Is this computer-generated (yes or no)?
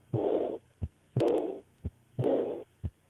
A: yes